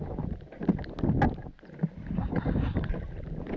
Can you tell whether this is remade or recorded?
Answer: recorded